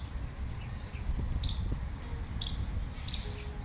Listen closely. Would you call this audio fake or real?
real